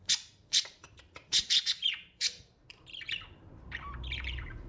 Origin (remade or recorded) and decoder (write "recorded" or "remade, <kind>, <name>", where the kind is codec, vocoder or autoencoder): remade, vocoder, BigVGAN v2